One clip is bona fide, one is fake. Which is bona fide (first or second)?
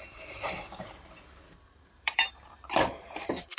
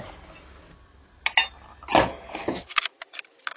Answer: second